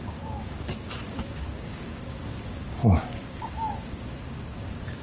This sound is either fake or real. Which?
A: fake